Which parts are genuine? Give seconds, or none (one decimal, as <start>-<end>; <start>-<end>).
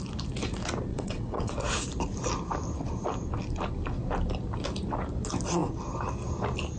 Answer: 0.0-0.9; 1.5-6.8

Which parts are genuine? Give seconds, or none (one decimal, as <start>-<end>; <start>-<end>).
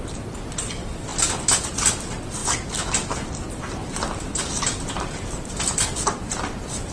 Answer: 0.0-6.9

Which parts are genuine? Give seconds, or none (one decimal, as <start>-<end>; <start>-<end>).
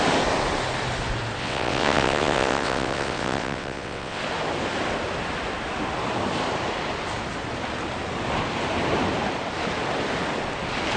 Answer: 0.0-1.4; 4.2-11.0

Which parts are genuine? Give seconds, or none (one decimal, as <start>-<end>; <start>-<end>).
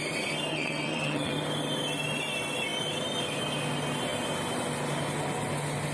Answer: 0.0-0.5; 1.3-5.9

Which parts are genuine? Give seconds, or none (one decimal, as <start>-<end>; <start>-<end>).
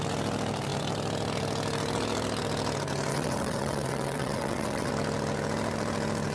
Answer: 0.0-3.1; 4.9-6.3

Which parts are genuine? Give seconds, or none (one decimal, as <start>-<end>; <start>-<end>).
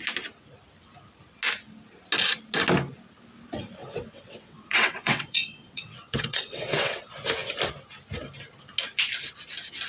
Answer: 0.0-3.8; 7.0-9.9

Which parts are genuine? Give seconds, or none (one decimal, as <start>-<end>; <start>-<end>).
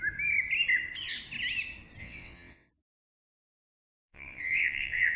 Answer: 0.0-2.0; 2.7-3.9